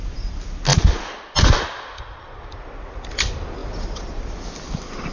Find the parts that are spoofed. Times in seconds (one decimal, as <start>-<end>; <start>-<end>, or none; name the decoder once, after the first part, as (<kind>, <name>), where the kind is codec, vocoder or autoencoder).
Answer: 3.6-4.5 (vocoder, BigVGAN v2)